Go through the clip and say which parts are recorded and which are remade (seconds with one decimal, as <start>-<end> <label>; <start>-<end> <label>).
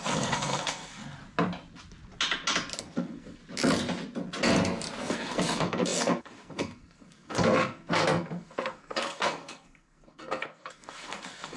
0.0-1.0 remade; 1.0-2.8 recorded; 2.8-3.4 remade; 3.4-5.0 recorded; 5.0-11.6 remade